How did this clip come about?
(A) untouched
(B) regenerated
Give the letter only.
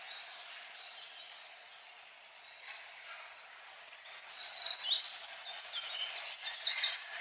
A